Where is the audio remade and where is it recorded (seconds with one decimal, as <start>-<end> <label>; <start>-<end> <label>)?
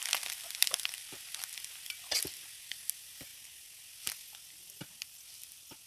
0.0-5.9 recorded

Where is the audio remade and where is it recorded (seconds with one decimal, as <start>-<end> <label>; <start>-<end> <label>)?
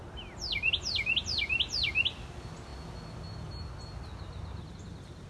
0.0-5.3 recorded